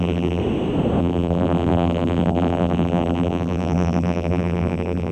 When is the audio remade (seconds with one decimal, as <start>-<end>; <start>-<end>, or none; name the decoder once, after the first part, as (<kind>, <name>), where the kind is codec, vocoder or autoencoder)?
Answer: 0.0-0.4 (vocoder, BigVGAN v2); 1.0-5.1